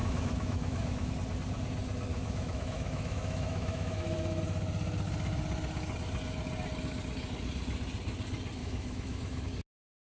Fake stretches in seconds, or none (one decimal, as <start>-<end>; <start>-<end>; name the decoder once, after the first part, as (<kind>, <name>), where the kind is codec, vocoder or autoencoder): 0.0-1.1 (autoencoder, DAC-VAE); 2.1-4.4; 8.6-9.4